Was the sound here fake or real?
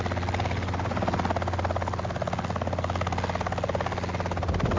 real